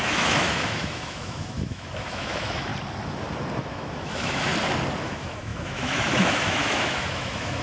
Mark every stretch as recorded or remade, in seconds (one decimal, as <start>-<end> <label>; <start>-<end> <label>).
0.0-2.7 remade; 2.7-3.6 recorded; 3.6-4.5 remade; 4.5-5.0 recorded; 5.0-7.6 remade